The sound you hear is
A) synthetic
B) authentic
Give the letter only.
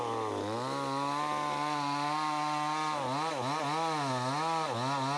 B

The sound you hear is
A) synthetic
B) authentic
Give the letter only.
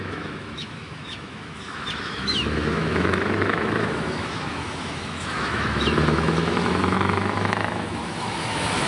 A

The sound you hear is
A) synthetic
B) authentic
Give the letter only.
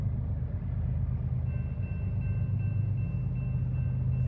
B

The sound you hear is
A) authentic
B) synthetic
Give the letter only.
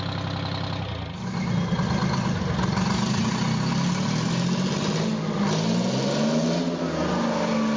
A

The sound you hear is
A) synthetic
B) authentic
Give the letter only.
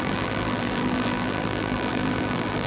A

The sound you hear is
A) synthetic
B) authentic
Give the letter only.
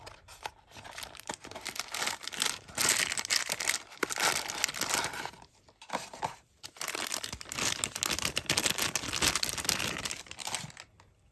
B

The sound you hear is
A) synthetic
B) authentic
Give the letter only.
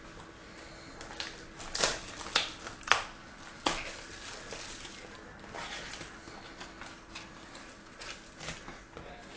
B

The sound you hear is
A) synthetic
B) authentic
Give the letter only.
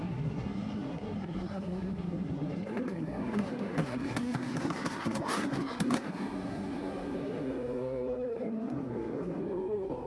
A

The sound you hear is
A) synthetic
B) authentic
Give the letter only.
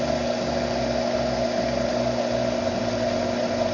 B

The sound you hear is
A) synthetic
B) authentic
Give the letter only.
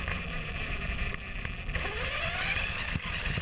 B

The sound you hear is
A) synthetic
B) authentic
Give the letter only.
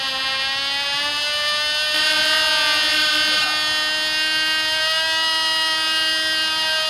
B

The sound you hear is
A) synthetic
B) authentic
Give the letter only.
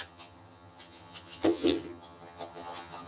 A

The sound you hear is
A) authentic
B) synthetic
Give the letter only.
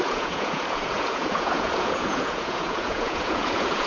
B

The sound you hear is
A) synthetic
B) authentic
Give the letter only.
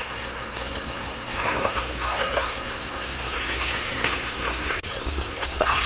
A